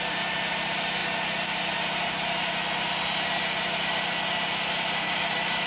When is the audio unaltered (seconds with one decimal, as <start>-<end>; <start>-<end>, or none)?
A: 0.0-5.7